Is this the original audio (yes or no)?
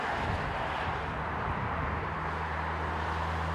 yes